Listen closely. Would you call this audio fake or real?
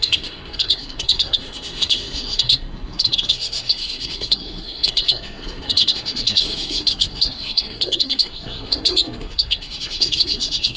fake